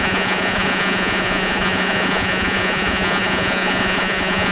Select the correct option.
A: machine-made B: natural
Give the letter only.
A